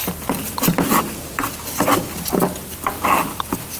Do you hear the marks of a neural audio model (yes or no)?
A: no